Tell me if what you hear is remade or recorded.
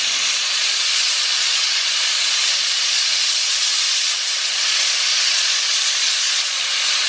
remade